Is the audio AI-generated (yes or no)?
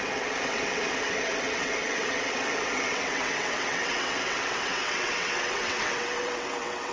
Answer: yes